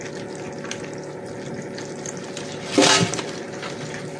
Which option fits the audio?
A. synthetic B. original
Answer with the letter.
B